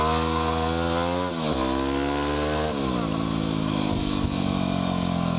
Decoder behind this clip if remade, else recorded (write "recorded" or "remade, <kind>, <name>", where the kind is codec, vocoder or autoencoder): recorded